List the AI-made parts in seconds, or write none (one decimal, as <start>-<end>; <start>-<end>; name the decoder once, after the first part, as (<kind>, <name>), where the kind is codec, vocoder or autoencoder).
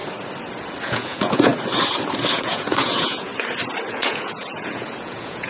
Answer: 0.8-1.5 (vocoder, Vocos); 2.3-3.3; 3.9-5.5